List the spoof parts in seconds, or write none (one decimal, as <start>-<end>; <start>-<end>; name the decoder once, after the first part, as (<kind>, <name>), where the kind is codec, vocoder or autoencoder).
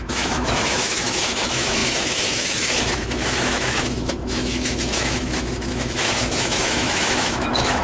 0.0-7.8 (autoencoder, DAC-VAE)